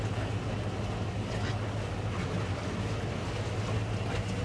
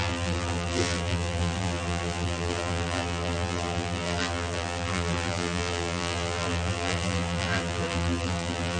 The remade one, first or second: second